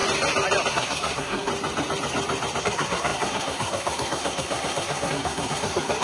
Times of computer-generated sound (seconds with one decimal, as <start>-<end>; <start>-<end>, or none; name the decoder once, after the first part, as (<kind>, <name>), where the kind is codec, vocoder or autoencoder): 0.7-1.5 (codec, SNAC); 2.6-6.0